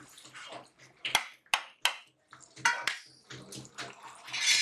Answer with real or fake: real